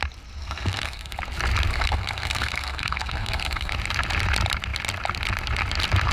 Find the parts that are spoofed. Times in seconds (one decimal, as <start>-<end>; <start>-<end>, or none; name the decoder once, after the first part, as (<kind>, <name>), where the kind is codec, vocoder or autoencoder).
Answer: 0.4-1.2 (codec, SNAC); 1.7-3.7